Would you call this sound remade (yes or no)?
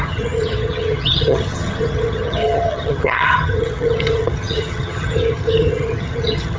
yes